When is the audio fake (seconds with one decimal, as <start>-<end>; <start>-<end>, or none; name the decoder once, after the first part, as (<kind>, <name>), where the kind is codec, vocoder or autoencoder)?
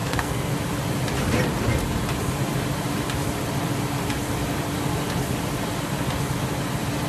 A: 0.0-0.5 (codec, SNAC)